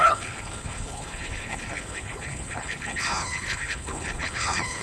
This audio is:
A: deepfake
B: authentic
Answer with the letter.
A